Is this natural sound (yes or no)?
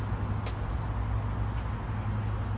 yes